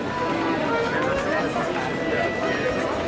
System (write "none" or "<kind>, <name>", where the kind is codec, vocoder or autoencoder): none